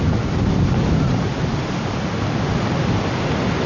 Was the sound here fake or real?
real